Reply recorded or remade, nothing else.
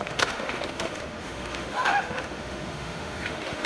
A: remade